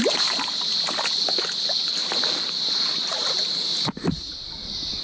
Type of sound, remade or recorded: recorded